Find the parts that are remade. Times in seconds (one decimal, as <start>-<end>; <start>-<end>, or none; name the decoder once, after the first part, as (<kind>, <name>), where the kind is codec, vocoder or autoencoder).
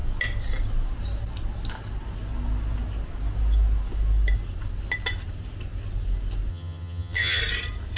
6.5-7.4 (vocoder, HiFi-GAN)